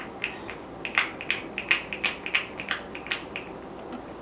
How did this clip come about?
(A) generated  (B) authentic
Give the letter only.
B